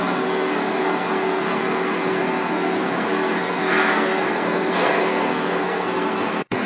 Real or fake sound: fake